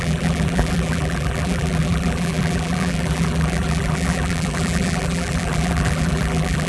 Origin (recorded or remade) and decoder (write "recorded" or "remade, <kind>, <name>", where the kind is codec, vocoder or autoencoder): remade, vocoder, BigVGAN v2